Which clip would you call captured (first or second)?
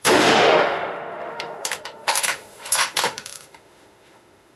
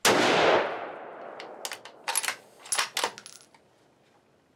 second